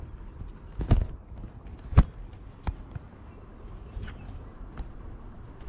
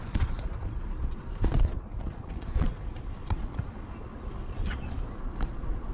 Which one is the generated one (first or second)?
second